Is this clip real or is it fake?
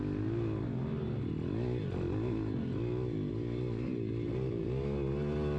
real